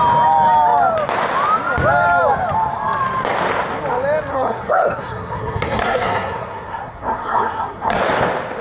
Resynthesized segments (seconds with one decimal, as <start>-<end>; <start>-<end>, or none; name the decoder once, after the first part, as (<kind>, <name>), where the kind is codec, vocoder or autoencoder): 4.3-8.0 (codec, SNAC)